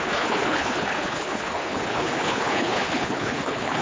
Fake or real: fake